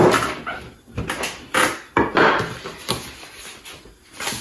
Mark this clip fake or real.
real